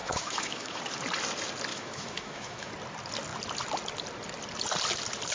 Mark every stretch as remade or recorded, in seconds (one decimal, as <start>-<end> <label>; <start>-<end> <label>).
0.0-0.8 remade; 0.8-1.7 recorded; 1.7-2.7 remade; 2.7-5.3 recorded